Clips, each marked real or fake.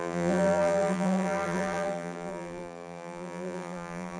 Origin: fake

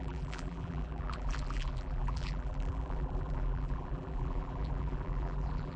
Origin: fake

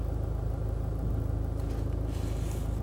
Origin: real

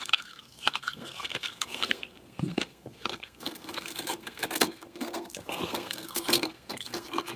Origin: fake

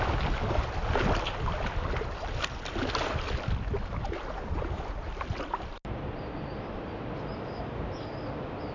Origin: real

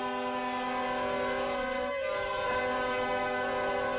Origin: real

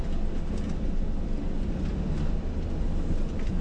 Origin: real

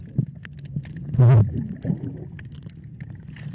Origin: real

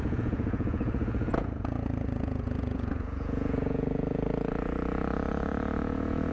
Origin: fake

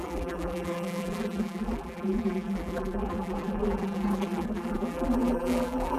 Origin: fake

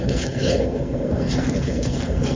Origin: fake